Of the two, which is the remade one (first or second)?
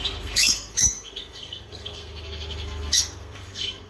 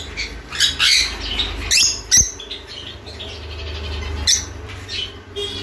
first